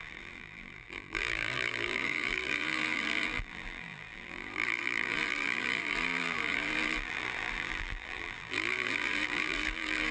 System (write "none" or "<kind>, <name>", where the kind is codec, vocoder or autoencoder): vocoder, BigVGAN v2